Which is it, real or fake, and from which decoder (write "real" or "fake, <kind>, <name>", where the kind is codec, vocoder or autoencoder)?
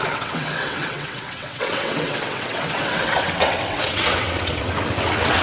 fake, vocoder, WaveNeXt